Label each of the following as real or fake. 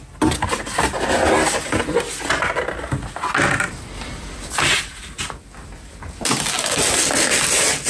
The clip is real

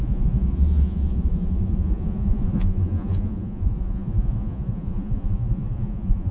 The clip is fake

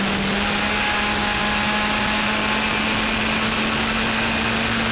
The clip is real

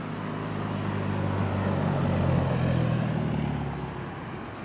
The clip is real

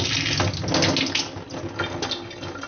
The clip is real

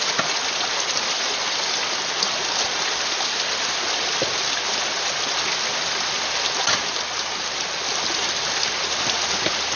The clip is real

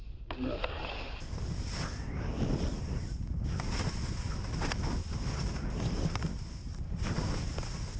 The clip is real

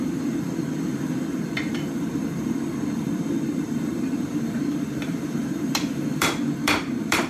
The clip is fake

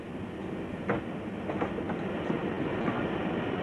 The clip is real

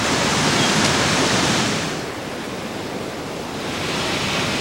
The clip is real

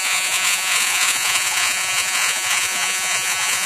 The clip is fake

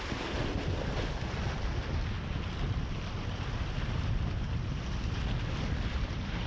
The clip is real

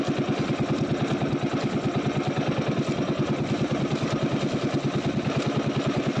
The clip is real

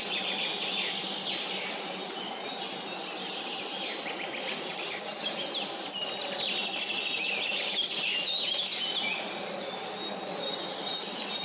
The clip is real